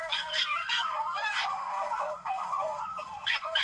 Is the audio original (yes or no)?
no